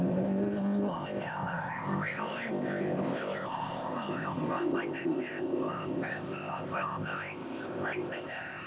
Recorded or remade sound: remade